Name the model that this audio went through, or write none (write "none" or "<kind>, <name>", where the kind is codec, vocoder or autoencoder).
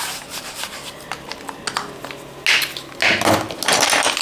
none